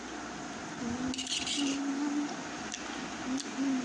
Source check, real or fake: real